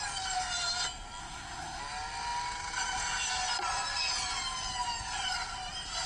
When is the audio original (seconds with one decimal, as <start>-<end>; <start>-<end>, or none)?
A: 0.0-1.2; 1.8-6.1